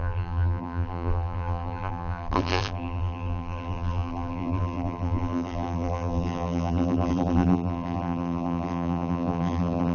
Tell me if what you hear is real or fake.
fake